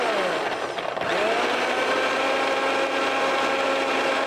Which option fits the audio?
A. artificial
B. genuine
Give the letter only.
B